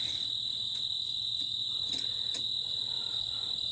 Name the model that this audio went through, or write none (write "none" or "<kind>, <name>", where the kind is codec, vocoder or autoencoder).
none